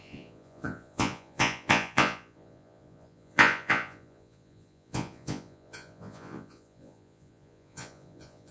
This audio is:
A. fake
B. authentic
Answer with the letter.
A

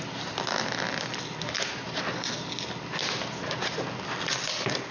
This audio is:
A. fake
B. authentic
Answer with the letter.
B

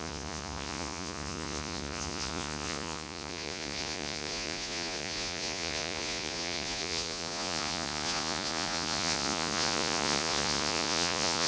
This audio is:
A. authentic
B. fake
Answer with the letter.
B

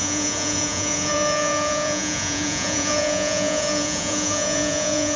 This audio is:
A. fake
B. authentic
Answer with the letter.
A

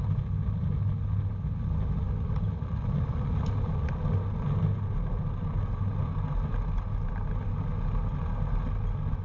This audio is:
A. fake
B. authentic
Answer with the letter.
B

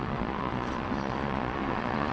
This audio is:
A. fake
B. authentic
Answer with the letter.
A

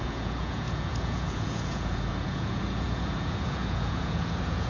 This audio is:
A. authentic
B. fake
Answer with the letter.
B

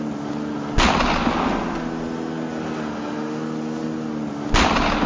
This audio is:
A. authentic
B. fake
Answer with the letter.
A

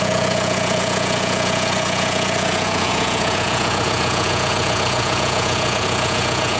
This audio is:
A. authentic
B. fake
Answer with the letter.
B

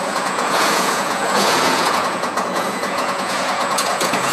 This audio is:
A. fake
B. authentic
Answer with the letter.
A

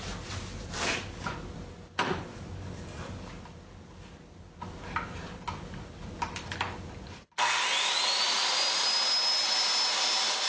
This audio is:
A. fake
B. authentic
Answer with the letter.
B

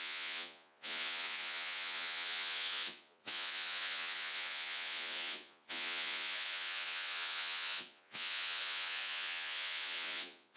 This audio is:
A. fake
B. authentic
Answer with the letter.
A